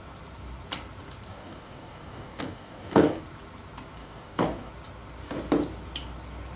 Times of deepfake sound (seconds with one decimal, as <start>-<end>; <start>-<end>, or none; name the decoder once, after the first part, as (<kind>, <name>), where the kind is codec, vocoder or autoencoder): 1.3-3.2 (codec, DAC); 4.0-4.7